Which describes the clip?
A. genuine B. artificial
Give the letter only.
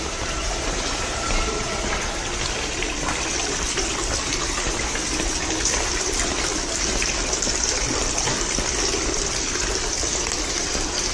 B